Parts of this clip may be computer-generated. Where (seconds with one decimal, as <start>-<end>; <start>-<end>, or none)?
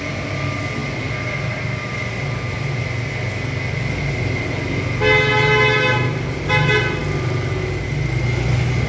none